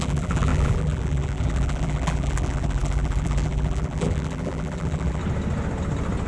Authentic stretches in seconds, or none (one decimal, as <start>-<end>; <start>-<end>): 5.2-6.3